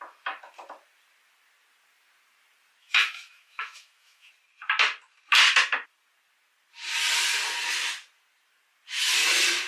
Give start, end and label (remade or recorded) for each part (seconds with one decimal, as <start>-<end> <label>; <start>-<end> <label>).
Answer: 0.0-2.8 recorded; 2.8-4.3 remade; 4.3-9.7 recorded